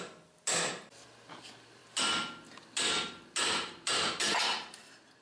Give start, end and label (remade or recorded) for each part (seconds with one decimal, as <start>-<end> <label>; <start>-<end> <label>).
0.0-5.2 recorded